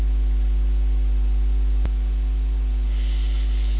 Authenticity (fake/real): real